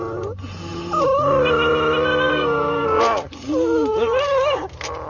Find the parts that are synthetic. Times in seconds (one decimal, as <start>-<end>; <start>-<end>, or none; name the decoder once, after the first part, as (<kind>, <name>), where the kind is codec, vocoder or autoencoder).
2.3-3.0 (codec, SNAC)